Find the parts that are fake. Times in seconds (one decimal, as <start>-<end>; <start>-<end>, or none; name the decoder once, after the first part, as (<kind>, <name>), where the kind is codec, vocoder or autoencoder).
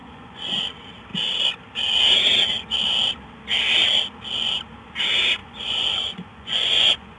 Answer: 0.0-0.6 (vocoder, Vocos); 5.4-7.2